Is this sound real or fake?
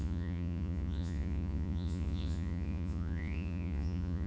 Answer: fake